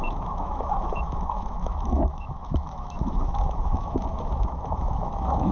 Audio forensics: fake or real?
fake